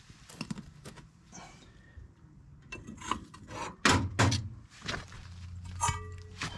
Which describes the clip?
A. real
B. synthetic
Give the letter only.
A